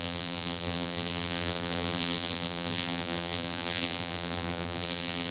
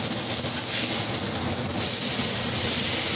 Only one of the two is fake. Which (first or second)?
first